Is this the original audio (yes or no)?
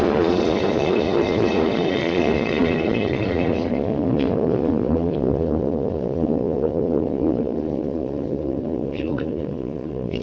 no